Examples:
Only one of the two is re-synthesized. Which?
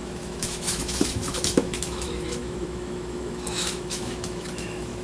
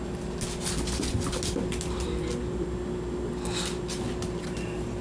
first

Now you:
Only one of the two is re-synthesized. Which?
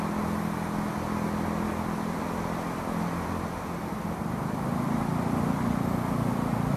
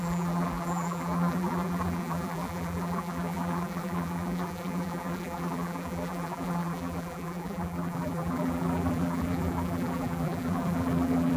second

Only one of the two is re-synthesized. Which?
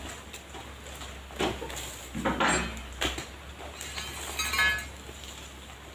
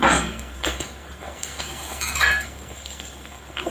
second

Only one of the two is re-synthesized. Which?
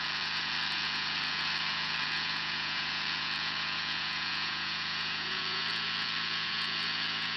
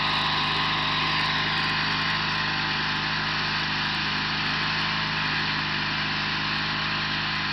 first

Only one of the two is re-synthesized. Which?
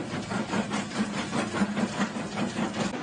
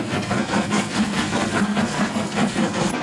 second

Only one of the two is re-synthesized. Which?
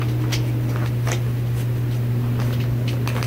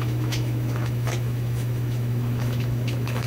second